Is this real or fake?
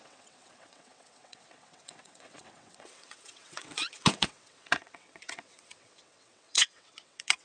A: fake